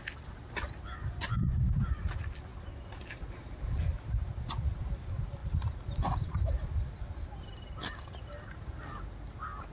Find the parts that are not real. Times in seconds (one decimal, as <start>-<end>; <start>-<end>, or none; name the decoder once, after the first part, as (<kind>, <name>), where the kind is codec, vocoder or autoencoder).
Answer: none